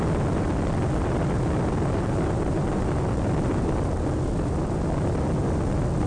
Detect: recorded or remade recorded